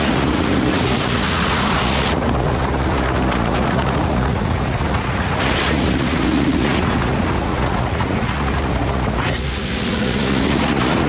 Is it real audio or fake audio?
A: fake